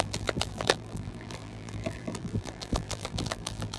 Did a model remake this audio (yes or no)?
yes